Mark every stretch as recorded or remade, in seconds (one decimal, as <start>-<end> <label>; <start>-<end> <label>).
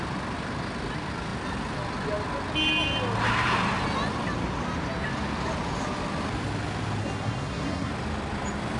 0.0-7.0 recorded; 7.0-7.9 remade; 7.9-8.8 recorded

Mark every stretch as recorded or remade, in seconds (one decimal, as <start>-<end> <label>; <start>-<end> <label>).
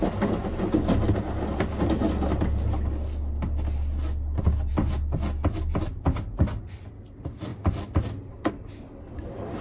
0.0-9.6 recorded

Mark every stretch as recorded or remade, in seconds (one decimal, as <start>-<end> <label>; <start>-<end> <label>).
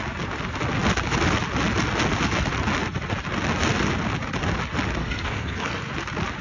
0.0-5.0 recorded; 5.0-5.9 remade; 5.9-6.4 recorded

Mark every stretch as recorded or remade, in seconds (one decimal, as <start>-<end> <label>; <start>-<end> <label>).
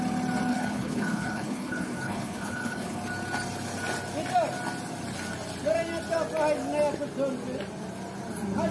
0.0-0.5 recorded; 0.5-3.0 remade; 3.0-8.7 recorded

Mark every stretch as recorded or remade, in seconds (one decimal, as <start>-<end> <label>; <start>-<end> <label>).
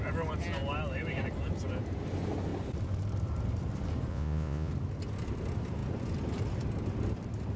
0.0-4.1 recorded; 4.1-4.7 remade; 4.7-7.6 recorded